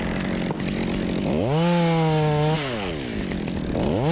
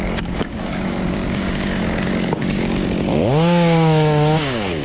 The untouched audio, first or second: first